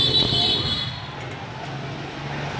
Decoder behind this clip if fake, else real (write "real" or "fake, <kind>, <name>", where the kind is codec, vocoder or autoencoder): real